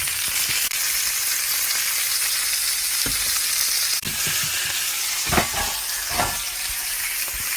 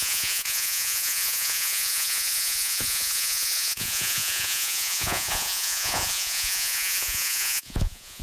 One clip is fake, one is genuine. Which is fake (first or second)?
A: second